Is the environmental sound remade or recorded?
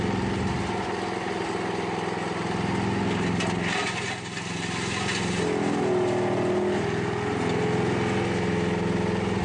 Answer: recorded